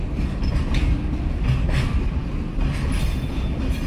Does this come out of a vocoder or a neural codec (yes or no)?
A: no